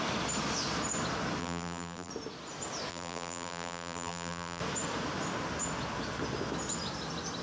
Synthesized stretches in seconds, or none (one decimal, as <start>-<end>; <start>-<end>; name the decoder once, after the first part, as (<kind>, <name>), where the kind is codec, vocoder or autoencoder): 1.4-2.1 (vocoder, BigVGAN v2); 2.9-4.6